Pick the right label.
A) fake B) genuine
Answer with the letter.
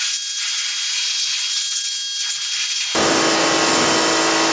B